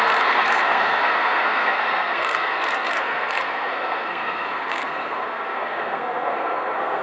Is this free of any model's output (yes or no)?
no